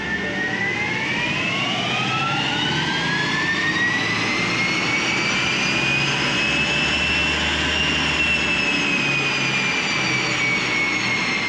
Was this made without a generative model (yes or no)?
yes